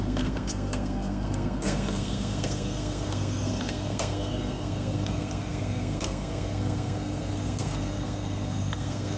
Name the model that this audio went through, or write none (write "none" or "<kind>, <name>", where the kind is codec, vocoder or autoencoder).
codec, SNAC